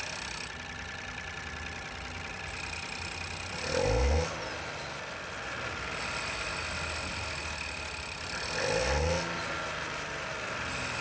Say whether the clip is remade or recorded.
recorded